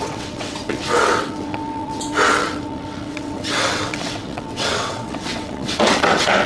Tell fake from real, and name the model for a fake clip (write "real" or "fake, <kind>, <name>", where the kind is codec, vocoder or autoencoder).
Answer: fake, vocoder, WaveNeXt